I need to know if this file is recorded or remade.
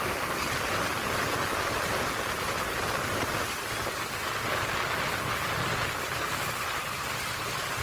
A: recorded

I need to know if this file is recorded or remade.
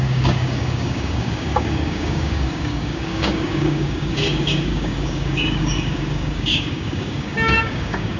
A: remade